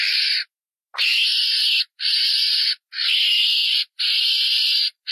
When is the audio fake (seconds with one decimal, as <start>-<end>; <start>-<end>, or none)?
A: 3.6-4.5